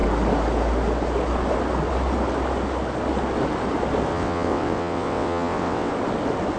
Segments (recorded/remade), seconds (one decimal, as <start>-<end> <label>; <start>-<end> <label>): 0.0-4.1 recorded; 4.1-5.9 remade; 5.9-6.6 recorded